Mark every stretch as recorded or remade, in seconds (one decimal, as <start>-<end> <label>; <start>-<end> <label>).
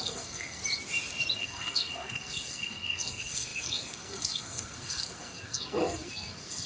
0.0-0.6 remade; 0.6-1.4 recorded; 1.4-6.7 remade